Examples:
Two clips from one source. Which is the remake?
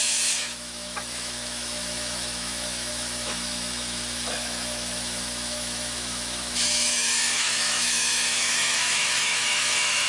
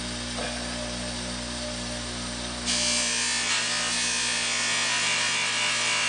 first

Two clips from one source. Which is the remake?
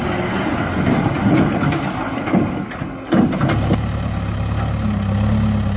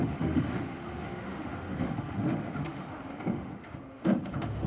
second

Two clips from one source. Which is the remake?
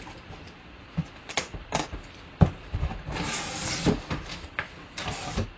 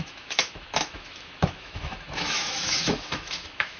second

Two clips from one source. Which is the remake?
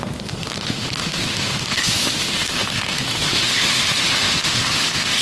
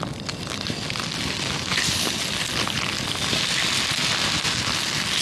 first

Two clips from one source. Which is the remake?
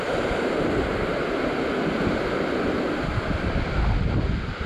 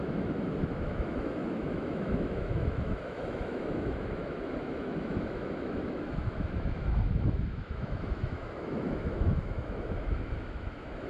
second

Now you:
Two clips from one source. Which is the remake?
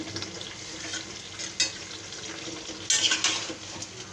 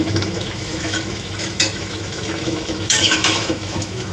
second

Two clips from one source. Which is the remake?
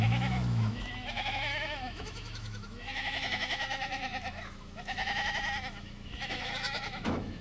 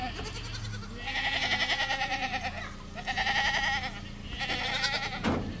first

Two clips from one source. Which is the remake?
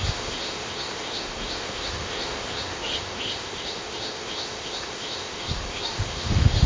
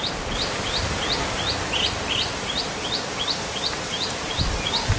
first